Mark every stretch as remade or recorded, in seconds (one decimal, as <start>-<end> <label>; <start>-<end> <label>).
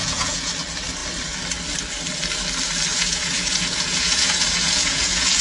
0.0-0.5 remade; 0.5-2.9 recorded; 2.9-5.4 remade